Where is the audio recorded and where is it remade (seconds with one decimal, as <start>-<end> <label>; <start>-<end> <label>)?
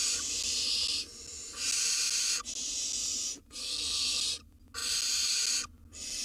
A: 0.0-3.6 recorded; 3.6-4.2 remade; 4.2-6.2 recorded